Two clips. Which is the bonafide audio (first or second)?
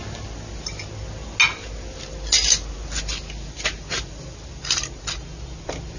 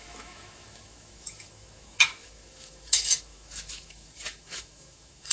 first